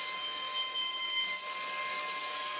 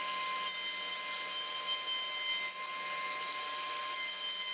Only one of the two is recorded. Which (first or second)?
second